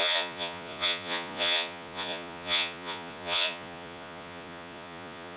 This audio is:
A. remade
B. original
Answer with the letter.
A